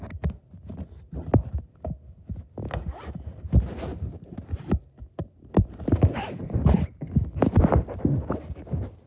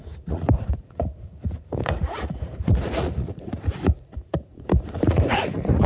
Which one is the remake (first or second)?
second